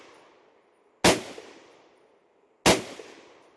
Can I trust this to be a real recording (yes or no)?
yes